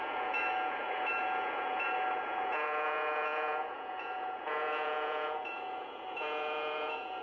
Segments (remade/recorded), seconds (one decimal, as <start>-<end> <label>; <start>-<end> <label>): 0.0-7.2 remade